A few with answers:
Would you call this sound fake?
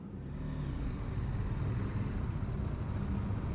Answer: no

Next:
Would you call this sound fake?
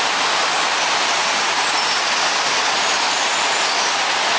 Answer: no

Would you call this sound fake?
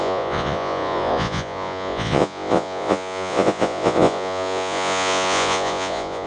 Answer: yes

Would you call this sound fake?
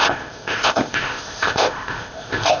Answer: yes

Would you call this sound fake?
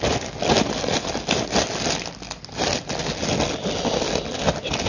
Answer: no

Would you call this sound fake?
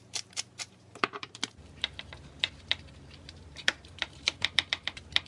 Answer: yes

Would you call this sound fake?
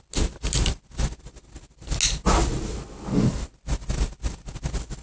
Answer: no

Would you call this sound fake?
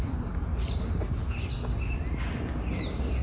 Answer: no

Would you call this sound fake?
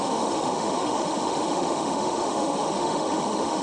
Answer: yes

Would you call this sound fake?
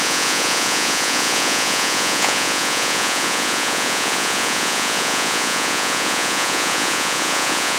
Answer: yes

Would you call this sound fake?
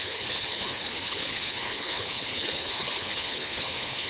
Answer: yes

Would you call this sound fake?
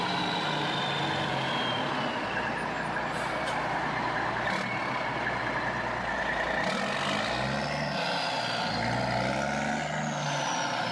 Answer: no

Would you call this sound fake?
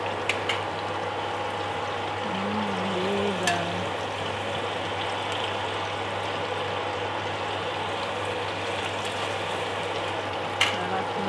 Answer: no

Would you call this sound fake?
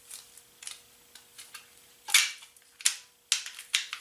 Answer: no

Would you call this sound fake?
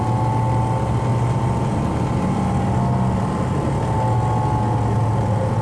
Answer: no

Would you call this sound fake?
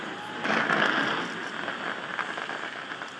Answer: no